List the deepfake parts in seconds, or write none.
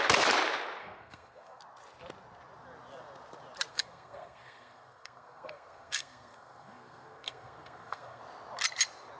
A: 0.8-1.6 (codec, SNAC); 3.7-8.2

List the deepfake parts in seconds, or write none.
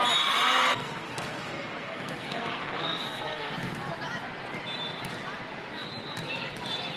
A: 0.7-3.5 (codec, SNAC)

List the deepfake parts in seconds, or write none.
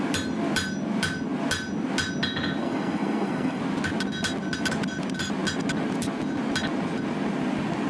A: 2.6-3.6 (codec, SNAC)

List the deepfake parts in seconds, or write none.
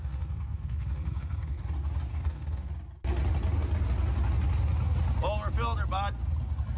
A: 0.0-1.6 (codec, SNAC); 2.1-2.7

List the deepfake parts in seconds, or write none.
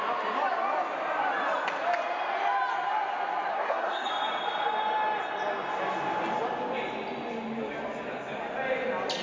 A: 3.5-4.1 (codec, SNAC)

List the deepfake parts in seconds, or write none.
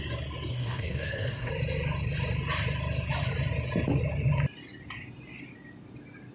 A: 0.5-1.5 (codec, SNAC)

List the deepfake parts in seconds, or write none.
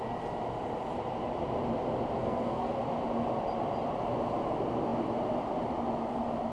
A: 2.2-2.7 (codec, SNAC)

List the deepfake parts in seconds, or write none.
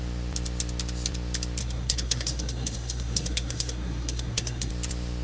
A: 1.6-4.7 (codec, SNAC)